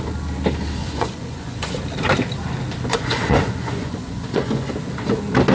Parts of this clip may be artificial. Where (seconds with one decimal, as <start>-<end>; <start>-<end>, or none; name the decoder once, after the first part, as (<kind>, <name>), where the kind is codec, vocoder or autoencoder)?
0.8-1.8 (vocoder, Vocos); 2.9-4.7